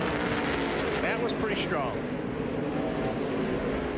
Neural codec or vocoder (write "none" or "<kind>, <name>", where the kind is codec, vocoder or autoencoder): none